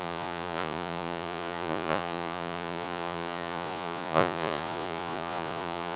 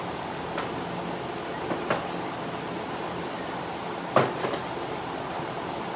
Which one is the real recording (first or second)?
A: second